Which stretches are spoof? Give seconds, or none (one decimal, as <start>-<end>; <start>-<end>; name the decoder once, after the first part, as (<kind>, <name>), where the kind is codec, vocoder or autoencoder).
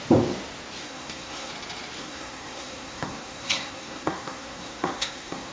0.8-1.5 (codec, SNAC); 2.0-5.5